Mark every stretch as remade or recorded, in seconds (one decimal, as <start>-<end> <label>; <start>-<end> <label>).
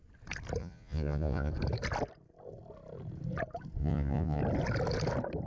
0.0-0.6 recorded; 0.6-1.5 remade; 1.5-3.8 recorded; 3.8-4.4 remade; 4.4-5.5 recorded